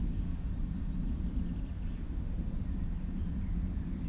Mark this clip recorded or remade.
recorded